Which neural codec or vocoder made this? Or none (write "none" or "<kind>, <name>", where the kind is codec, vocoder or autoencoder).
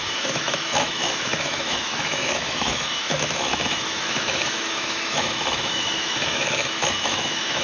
autoencoder, DAC-VAE